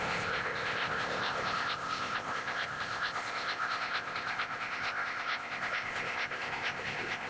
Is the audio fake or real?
fake